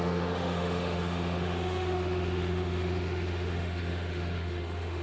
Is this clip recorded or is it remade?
remade